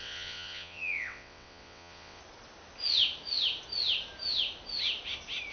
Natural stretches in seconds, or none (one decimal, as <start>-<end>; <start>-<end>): 2.2-5.5